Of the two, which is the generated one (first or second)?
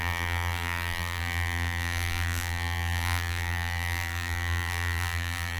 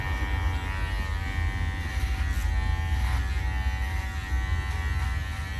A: first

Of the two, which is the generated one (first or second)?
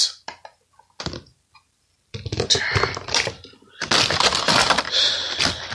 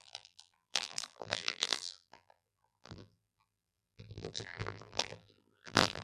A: second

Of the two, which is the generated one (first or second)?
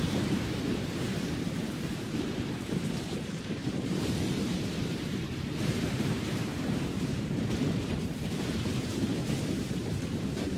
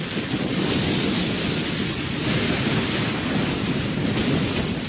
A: first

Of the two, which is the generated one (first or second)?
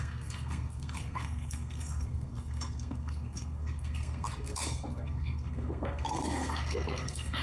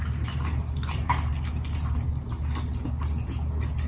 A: first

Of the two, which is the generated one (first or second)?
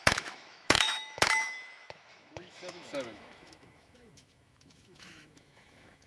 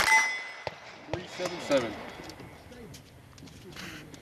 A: first